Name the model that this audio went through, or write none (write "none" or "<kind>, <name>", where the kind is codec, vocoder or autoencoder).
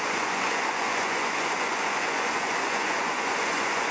vocoder, Vocos